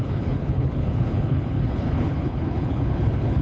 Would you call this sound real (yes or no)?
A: no